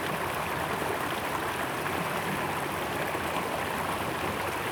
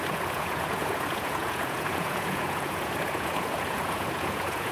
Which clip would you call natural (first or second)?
first